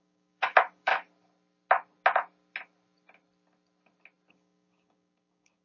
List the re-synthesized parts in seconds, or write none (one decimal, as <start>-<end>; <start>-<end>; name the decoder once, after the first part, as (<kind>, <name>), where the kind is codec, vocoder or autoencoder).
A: 0.0-0.9 (codec, DAC); 4.3-5.6

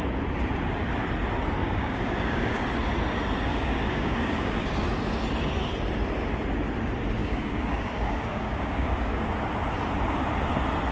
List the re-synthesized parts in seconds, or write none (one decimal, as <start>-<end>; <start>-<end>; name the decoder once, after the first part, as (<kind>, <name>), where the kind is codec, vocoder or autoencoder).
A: 1.6-2.6 (codec, DAC); 3.5-4.7; 7.2-9.3

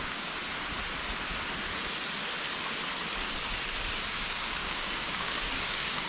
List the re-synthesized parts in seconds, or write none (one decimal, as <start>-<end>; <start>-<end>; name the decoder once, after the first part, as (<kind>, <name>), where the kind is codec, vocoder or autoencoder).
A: 0.0-0.4 (codec, DAC); 4.1-6.1

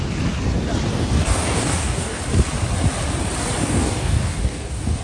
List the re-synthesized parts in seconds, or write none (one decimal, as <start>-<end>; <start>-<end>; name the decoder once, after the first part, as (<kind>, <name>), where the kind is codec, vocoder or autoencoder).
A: 0.9-2.2 (codec, DAC); 3.6-5.0